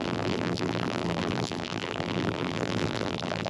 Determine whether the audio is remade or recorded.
remade